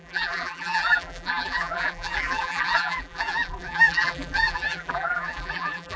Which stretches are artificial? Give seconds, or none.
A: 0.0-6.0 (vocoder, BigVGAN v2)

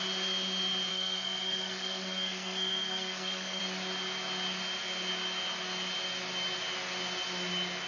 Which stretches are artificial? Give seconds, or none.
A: 0.9-3.6 (codec, SNAC)

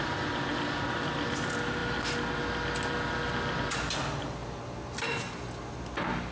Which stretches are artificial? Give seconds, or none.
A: none

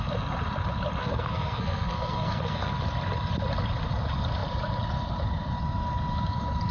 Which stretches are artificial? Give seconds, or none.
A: 1.0-2.7 (codec, SNAC)

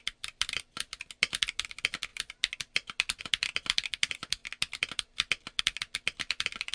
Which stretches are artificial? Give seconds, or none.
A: none